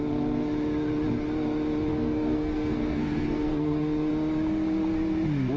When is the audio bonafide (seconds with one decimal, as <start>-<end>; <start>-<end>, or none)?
0.0-1.9; 4.1-5.6